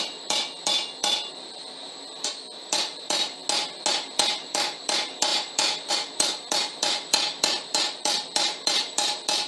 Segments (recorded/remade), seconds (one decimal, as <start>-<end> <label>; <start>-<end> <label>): 0.0-3.4 remade; 3.4-3.9 recorded; 3.9-9.5 remade